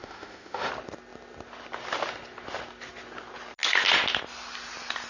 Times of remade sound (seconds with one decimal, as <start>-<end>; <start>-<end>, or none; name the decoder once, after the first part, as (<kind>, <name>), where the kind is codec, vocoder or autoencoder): 0.0-0.7 (autoencoder, DAC-VAE)